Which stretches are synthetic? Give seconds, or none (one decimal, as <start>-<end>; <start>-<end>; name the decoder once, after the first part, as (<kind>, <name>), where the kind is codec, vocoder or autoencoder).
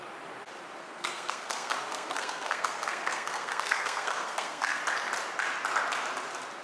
0.8-4.8 (codec, SNAC)